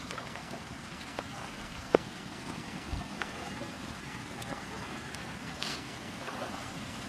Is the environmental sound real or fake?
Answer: fake